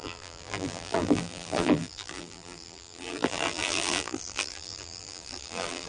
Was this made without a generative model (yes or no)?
no